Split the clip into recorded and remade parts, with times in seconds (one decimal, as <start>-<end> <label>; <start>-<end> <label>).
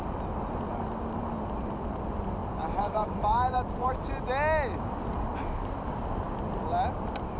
0.0-2.4 recorded; 2.4-3.9 remade; 3.9-7.4 recorded